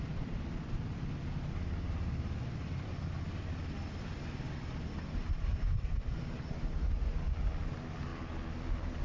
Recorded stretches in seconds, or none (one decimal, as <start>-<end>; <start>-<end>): 0.0-9.0